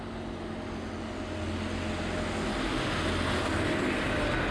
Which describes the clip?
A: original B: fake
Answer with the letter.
A